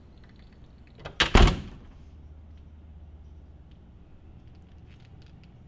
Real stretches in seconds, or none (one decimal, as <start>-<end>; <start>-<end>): 0.0-5.7